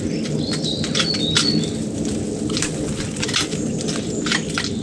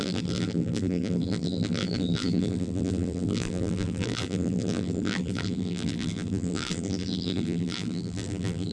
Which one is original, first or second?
first